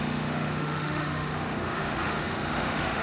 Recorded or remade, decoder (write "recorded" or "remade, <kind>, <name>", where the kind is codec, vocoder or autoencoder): remade, autoencoder, DAC-VAE